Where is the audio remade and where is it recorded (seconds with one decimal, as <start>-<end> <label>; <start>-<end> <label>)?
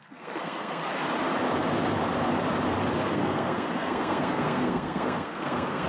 0.0-0.8 remade; 0.8-3.0 recorded; 3.0-5.9 remade